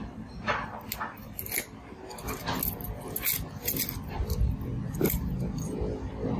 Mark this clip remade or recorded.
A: recorded